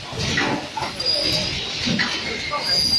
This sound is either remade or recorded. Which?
recorded